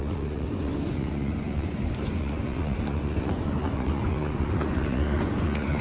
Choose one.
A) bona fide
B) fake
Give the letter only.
B